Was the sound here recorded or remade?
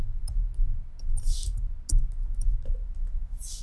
recorded